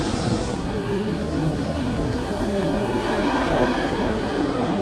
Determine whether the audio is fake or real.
fake